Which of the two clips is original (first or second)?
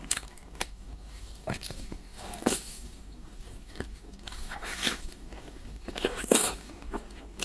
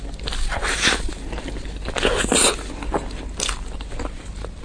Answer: second